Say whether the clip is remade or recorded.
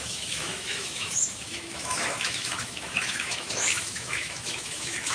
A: remade